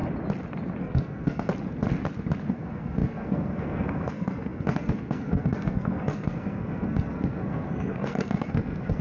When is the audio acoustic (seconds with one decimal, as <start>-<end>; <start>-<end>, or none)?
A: 0.0-0.8; 1.5-2.5